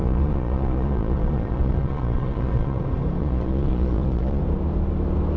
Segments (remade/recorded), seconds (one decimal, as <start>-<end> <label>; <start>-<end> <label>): 0.0-2.8 remade; 2.8-3.2 recorded; 3.2-4.4 remade; 4.4-5.4 recorded

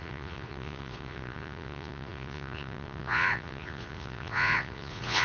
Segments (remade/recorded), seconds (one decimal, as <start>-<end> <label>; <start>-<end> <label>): 0.0-5.2 remade

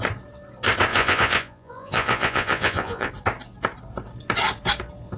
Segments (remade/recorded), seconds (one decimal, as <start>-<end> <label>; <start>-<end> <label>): 0.0-0.9 recorded; 0.9-3.1 remade; 3.1-5.2 recorded

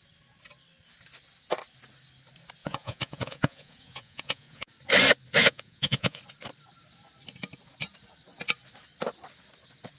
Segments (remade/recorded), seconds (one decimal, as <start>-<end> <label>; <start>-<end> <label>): 0.0-2.6 recorded; 2.6-4.7 remade; 4.7-5.4 recorded; 5.4-6.2 remade; 6.2-10.0 recorded

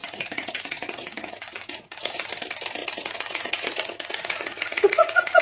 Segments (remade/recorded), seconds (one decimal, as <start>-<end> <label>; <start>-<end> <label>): 0.0-2.3 remade; 2.3-2.8 recorded; 2.8-5.4 remade

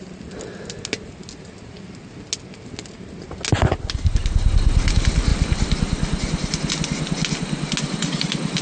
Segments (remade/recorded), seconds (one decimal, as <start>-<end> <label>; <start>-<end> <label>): 0.0-8.6 recorded